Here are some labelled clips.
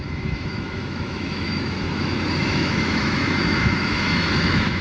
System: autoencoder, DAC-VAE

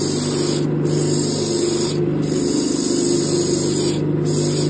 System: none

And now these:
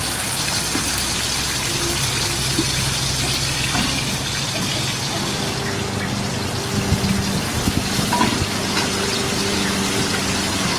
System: none